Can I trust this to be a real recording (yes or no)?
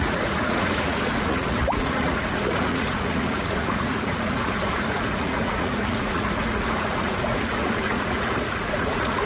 no